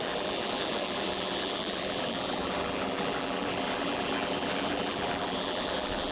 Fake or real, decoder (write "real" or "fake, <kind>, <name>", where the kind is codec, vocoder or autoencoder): fake, vocoder, BigVGAN v2